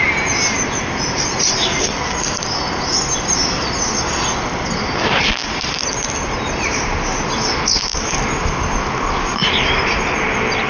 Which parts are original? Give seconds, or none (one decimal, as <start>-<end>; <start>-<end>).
0.0-10.7